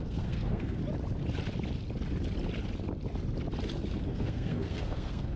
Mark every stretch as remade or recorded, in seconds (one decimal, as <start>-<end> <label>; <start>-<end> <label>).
0.0-0.8 remade; 0.8-4.0 recorded; 4.0-5.4 remade